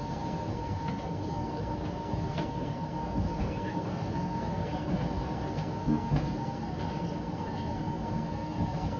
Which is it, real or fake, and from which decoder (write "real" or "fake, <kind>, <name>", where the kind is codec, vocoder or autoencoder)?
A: fake, codec, SNAC